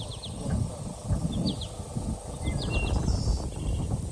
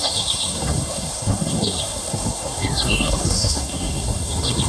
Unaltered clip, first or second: first